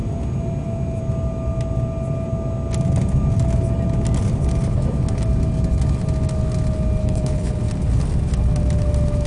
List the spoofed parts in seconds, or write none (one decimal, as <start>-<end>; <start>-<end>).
7.0-7.6